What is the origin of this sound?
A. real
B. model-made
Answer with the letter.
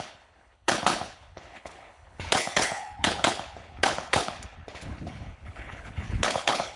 B